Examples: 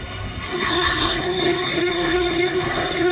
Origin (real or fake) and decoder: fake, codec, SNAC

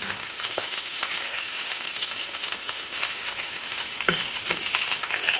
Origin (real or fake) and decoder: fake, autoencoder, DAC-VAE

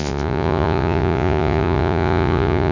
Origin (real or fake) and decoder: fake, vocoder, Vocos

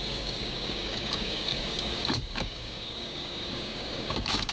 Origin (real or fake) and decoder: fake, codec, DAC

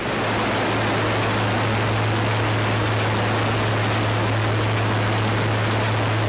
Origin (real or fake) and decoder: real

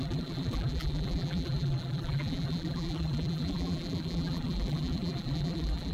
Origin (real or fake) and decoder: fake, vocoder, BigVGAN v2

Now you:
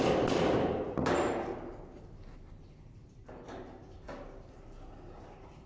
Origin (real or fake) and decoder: real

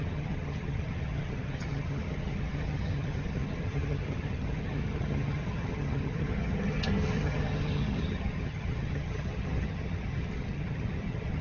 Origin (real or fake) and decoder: fake, vocoder, HiFi-GAN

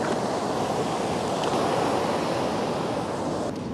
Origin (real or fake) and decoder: real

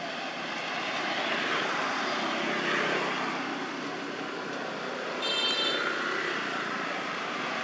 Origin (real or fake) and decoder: real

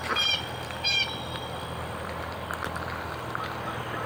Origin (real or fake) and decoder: real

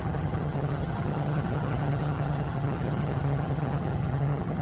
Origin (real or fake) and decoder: fake, vocoder, HiFi-GAN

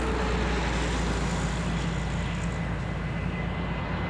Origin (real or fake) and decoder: real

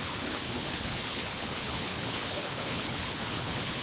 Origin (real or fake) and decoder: fake, codec, HILCodec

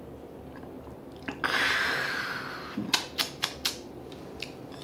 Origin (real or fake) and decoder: real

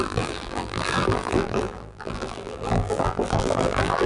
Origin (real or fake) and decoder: fake, vocoder, BigVGAN v2